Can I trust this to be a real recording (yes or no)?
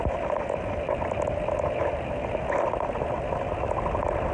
yes